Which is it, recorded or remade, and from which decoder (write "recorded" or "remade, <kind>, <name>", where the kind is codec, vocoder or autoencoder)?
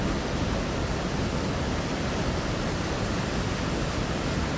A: recorded